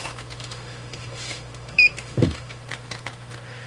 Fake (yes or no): yes